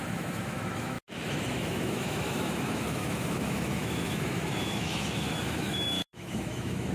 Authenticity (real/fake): fake